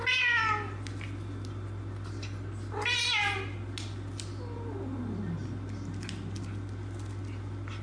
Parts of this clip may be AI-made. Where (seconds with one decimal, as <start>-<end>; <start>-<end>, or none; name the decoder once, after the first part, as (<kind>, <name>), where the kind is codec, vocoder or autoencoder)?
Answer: none